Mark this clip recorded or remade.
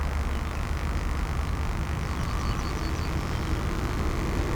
recorded